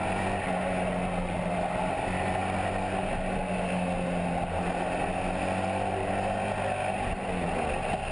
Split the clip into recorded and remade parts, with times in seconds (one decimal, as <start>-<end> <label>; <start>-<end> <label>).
0.0-8.1 recorded